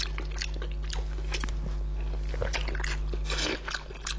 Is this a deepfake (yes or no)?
no